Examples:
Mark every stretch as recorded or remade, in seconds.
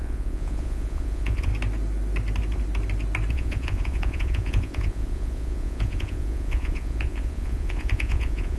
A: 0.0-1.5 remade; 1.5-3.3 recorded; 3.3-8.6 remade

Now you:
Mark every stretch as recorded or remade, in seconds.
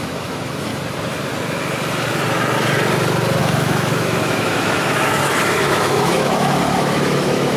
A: 0.0-0.7 remade; 0.7-3.4 recorded; 3.4-7.6 remade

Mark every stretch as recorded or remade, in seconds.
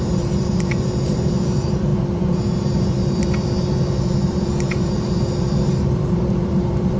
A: 0.0-7.0 remade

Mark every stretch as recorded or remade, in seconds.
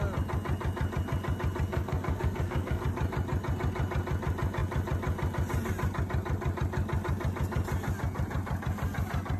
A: 0.0-1.7 recorded; 1.7-2.8 remade; 2.8-9.4 recorded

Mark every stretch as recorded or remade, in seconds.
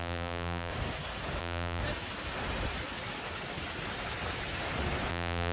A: 0.0-0.7 remade; 0.7-1.4 recorded; 1.4-1.8 remade; 1.8-5.1 recorded; 5.1-5.5 remade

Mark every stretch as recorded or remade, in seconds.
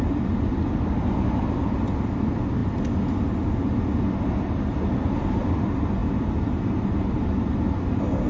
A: 0.0-8.3 recorded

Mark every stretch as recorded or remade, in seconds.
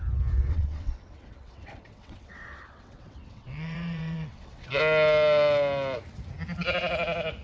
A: 0.0-0.4 recorded; 0.4-4.8 remade; 4.8-7.4 recorded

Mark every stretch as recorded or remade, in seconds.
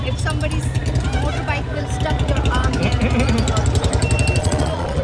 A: 0.0-4.4 recorded; 4.4-5.0 remade